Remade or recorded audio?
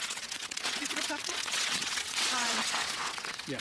remade